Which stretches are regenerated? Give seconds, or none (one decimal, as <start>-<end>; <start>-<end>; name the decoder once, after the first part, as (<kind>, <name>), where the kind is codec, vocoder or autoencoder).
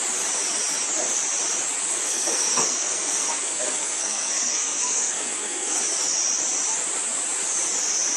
1.9-5.8 (codec, SNAC)